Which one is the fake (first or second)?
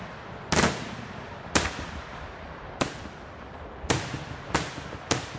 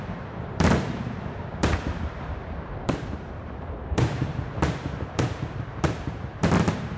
second